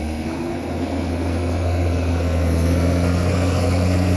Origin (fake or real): fake